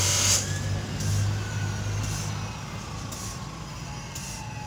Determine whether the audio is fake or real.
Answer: real